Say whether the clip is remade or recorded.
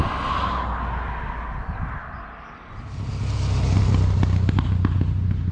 recorded